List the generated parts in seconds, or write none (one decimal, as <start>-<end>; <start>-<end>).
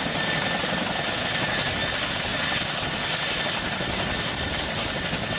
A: none